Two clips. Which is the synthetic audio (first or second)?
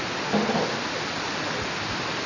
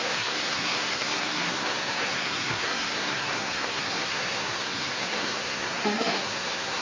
second